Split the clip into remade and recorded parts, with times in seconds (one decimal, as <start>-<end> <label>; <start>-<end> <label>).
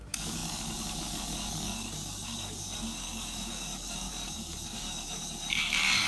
0.0-6.1 remade